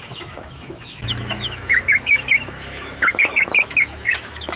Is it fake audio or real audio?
fake